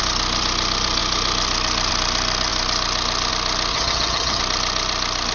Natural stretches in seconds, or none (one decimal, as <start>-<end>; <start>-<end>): 0.0-3.7; 4.4-5.3